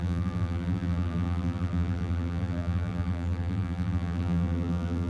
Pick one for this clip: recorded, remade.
remade